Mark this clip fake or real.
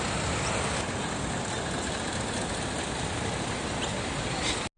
real